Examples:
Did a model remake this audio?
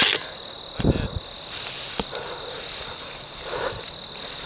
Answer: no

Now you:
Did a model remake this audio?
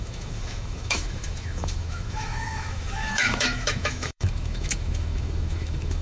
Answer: yes